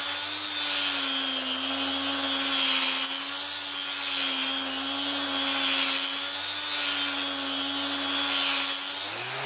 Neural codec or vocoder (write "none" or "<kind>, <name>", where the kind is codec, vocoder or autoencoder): none